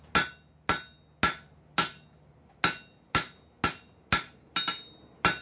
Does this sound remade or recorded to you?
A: recorded